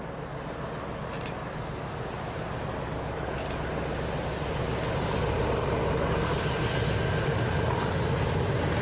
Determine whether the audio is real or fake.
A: real